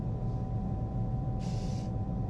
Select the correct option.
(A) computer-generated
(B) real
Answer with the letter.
A